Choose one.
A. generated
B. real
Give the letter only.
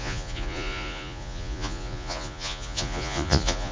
A